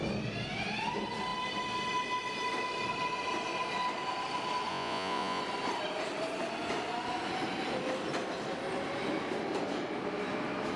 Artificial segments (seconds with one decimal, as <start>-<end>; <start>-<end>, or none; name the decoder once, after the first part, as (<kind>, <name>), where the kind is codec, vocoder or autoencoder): 4.7-5.4 (vocoder, Vocos)